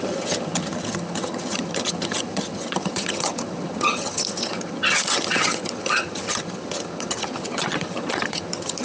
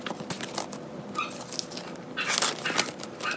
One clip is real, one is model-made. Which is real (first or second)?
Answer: second